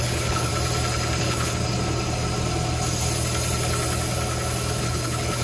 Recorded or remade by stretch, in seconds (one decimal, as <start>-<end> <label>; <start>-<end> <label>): 0.0-0.5 remade; 0.5-1.2 recorded; 1.2-1.6 remade; 1.6-4.8 recorded; 4.8-5.4 remade